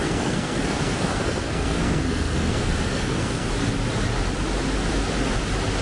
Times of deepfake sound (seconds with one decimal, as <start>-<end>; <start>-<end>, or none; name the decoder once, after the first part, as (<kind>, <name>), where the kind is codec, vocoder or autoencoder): 0.0-3.5 (codec, SNAC)